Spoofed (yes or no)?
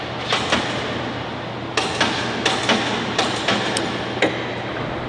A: no